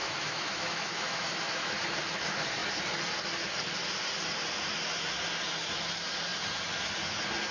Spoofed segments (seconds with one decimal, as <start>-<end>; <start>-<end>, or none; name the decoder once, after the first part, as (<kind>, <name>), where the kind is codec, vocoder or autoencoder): 0.0-1.7 (autoencoder, DAC-VAE)